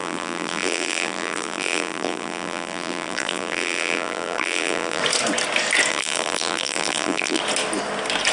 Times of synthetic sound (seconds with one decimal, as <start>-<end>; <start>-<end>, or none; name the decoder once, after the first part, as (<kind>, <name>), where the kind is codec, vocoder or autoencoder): 0.0-5.0 (vocoder, BigVGAN v2); 5.9-7.4